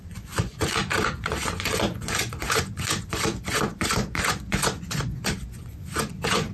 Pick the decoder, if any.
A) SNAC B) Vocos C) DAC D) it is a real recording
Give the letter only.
B